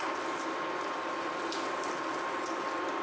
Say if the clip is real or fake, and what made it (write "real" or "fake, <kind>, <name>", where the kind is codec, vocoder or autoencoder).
real